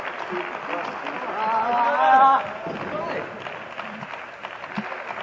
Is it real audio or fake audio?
real